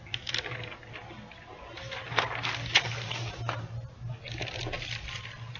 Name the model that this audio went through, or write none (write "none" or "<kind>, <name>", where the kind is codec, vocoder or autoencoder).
none